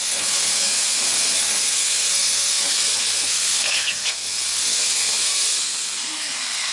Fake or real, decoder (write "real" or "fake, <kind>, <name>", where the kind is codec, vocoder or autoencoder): fake, codec, SNAC